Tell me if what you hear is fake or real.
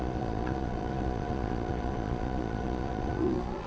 fake